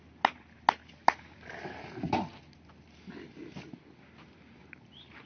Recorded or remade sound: recorded